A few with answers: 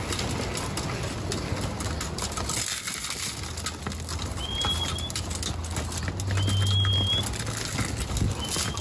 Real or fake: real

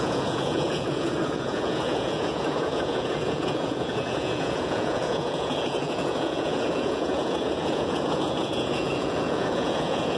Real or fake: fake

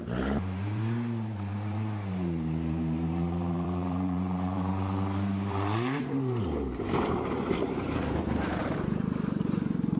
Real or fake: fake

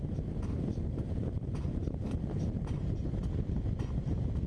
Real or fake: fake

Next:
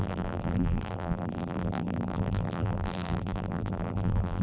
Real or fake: fake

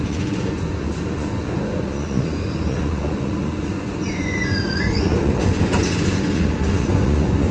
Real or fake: fake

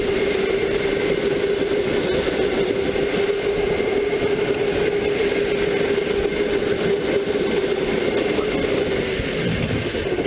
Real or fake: real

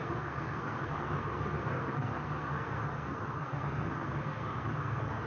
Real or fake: fake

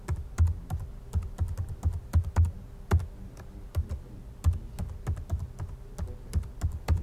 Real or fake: real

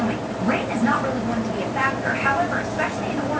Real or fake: real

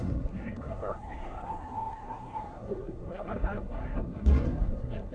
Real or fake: fake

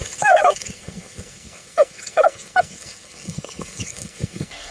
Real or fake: fake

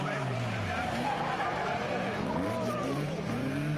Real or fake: fake